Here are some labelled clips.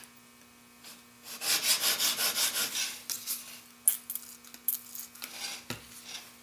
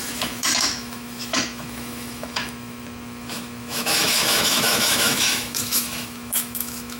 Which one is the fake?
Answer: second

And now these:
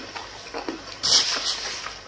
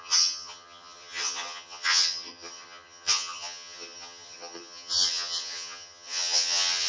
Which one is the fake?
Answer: second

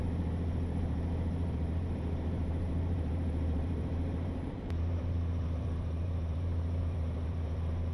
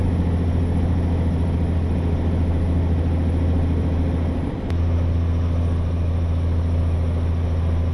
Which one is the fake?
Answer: first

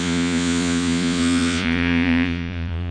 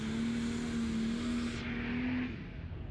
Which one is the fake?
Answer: first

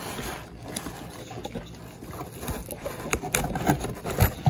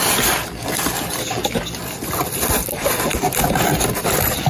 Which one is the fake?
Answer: second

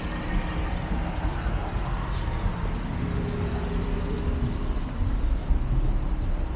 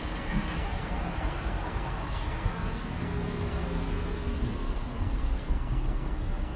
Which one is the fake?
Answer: second